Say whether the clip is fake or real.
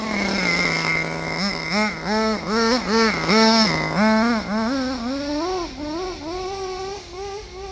real